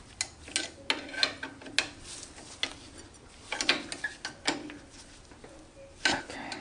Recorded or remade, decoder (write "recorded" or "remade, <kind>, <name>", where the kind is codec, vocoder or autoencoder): recorded